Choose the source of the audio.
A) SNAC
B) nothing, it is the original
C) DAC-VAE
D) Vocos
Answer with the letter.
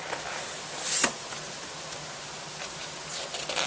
B